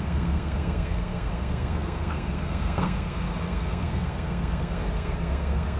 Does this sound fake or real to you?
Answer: fake